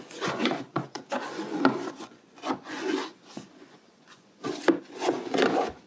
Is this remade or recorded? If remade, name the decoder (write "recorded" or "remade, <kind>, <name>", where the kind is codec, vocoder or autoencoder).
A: remade, vocoder, Vocos